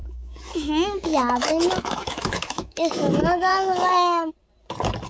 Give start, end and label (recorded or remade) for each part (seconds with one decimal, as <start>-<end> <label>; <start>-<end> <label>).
0.0-3.1 remade; 3.1-3.5 recorded; 3.5-4.3 remade; 4.3-5.1 recorded